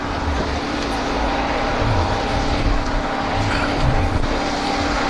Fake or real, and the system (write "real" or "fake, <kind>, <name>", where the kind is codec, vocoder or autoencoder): real